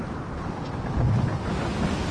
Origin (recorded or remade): recorded